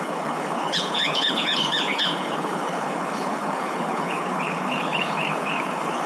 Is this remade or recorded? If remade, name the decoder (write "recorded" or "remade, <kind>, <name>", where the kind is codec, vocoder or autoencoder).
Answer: remade, codec, HILCodec